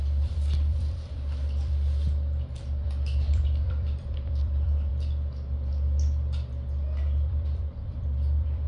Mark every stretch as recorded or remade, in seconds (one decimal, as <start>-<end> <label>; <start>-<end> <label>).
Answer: 0.0-4.9 remade; 4.9-7.3 recorded; 7.3-8.7 remade